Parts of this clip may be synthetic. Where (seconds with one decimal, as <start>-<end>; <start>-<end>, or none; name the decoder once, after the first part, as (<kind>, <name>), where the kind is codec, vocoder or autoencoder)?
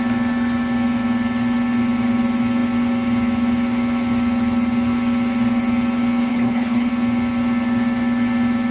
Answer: 6.3-6.9 (codec, HILCodec)